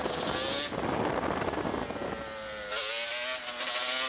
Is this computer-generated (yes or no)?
no